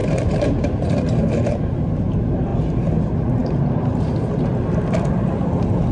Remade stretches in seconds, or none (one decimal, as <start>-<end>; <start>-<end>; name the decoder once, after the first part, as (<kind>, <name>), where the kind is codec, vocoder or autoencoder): 0.0-0.9 (vocoder, BigVGAN v2)